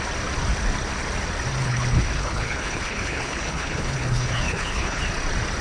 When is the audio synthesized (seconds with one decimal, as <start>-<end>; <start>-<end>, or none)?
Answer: 1.6-5.0